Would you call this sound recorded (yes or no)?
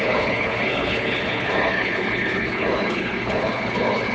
no